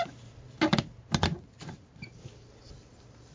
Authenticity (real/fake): real